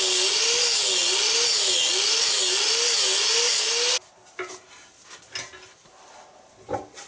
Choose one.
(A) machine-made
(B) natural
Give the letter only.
B